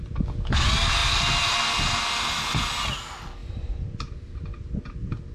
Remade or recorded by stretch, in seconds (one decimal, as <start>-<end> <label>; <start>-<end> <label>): 0.0-3.4 recorded; 3.4-4.7 remade; 4.7-5.3 recorded

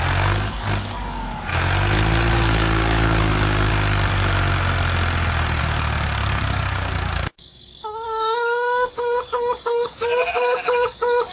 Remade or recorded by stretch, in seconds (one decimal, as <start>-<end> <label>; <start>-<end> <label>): 0.0-1.5 remade; 1.5-2.3 recorded; 2.3-3.7 remade; 3.7-5.6 recorded; 5.6-11.3 remade

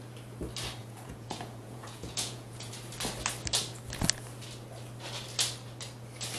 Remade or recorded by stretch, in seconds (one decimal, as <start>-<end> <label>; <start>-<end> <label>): 0.0-0.8 recorded; 0.8-2.7 remade; 2.7-6.4 recorded

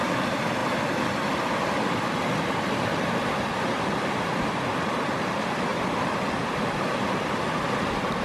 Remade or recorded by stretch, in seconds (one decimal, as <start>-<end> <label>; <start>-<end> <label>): 0.0-8.2 recorded

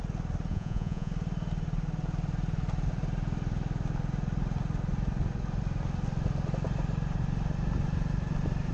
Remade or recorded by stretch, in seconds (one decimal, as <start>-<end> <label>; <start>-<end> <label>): 0.0-0.5 recorded; 0.5-1.1 remade; 1.1-8.7 recorded

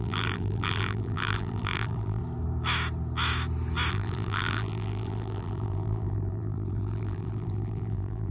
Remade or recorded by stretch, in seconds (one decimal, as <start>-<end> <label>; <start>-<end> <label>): 0.0-2.2 remade; 2.2-3.9 recorded; 3.9-8.3 remade